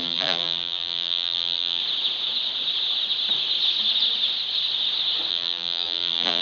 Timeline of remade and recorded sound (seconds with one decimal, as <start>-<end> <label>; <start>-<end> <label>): 0.0-1.8 remade; 1.8-5.3 recorded; 5.3-6.4 remade